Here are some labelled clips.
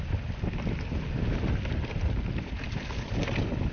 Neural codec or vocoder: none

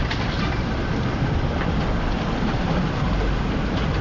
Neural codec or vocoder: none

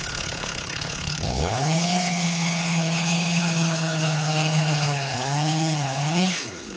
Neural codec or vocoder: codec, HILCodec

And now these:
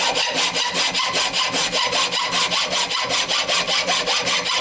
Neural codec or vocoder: none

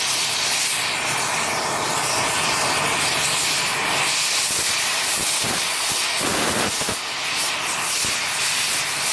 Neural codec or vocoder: none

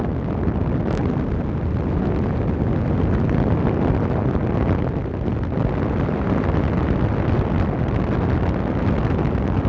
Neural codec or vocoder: none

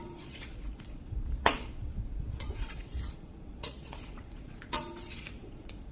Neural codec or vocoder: vocoder, Vocos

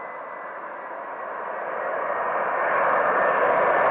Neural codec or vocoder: none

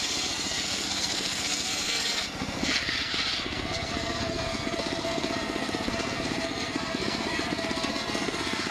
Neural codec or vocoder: codec, SNAC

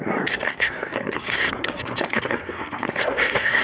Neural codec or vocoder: codec, SNAC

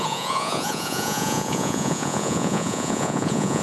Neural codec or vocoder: vocoder, Vocos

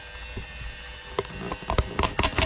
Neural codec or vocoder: none